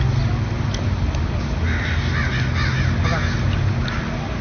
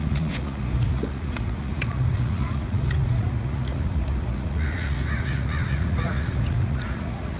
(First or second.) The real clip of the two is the first